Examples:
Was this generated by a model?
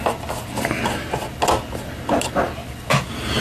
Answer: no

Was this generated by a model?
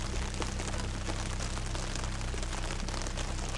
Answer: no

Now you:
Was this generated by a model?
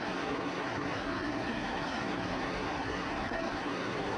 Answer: yes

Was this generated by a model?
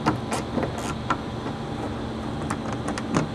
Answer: no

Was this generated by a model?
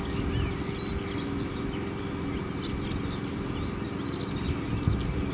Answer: no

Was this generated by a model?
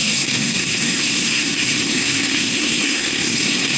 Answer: yes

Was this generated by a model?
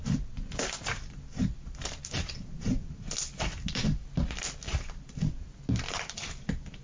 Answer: no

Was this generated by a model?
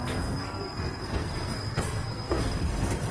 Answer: yes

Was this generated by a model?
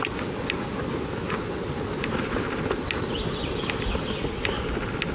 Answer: no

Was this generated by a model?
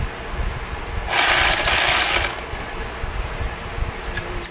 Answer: no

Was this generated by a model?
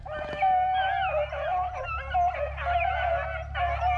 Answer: no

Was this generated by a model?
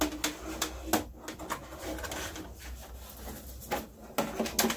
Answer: no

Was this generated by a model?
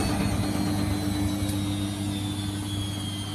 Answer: no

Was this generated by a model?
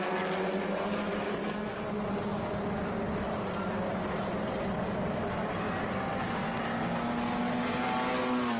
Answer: no